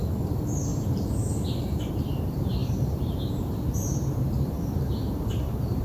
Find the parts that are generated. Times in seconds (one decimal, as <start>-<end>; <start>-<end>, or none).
0.0-5.8